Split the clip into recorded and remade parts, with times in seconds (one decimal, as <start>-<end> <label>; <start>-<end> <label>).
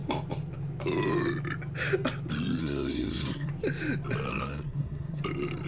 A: 0.0-2.6 recorded; 2.6-3.5 remade; 3.5-4.3 recorded; 4.3-5.2 remade; 5.2-5.7 recorded